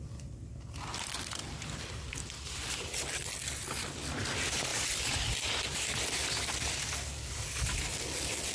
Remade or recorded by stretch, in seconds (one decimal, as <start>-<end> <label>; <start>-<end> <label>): 0.0-8.5 recorded